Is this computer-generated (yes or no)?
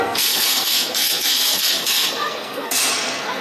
yes